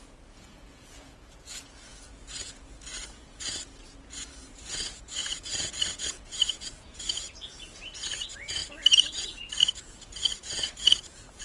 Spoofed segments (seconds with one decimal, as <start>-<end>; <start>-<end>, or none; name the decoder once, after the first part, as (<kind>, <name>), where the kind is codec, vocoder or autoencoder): 0.0-8.6 (vocoder, Vocos); 9.6-11.4